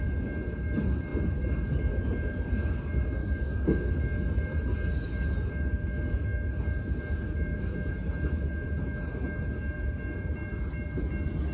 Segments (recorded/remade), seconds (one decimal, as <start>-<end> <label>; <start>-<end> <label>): 0.0-3.2 recorded; 3.2-3.9 remade; 3.9-11.5 recorded